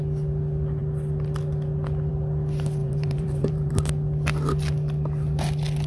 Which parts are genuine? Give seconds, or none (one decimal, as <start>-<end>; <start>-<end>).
0.0-2.8; 3.7-5.9